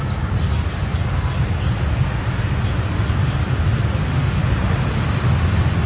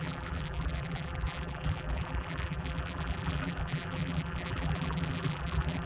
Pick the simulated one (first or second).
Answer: second